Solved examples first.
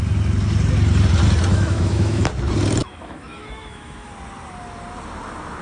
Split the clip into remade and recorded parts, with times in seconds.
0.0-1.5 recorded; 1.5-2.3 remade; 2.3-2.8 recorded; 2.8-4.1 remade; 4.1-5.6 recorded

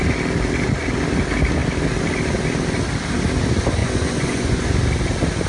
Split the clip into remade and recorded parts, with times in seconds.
0.0-3.8 recorded; 3.8-4.7 remade; 4.7-5.5 recorded

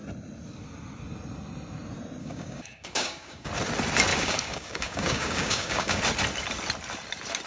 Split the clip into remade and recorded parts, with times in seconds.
0.0-2.2 recorded; 2.2-3.5 remade; 3.5-4.1 recorded; 4.1-6.0 remade; 6.0-7.5 recorded

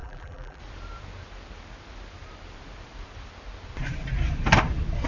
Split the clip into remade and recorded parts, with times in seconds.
0.0-0.6 remade; 0.6-5.1 recorded

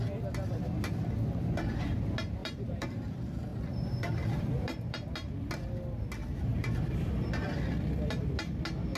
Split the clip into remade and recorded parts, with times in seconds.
0.0-2.4 recorded; 2.4-3.1 remade; 3.1-3.5 recorded; 3.5-5.1 remade; 5.1-6.2 recorded; 6.2-7.1 remade; 7.1-9.0 recorded

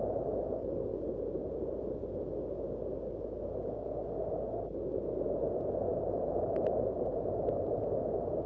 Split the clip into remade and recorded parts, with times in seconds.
0.0-1.4 recorded; 1.4-2.0 remade; 2.0-5.9 recorded; 5.9-7.8 remade; 7.8-8.5 recorded